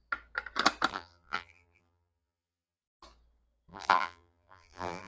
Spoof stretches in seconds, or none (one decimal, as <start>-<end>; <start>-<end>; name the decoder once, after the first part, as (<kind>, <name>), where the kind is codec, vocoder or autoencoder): 0.9-2.8 (vocoder, BigVGAN v2); 3.7-5.1